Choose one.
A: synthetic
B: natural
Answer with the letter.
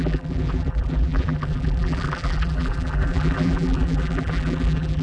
A